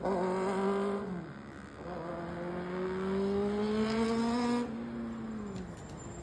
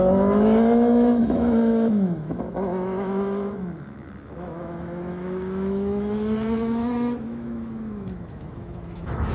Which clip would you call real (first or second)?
first